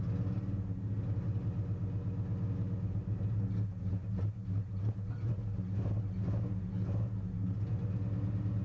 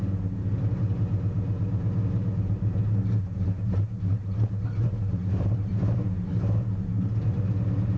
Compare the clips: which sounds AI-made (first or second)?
second